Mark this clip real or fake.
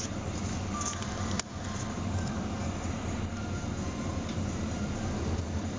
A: real